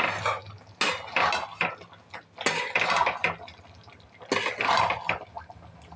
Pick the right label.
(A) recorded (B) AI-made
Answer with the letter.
A